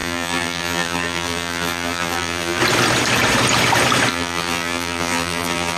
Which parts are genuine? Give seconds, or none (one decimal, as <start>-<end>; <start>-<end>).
2.6-4.1